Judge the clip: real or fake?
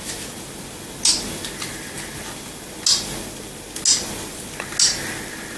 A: real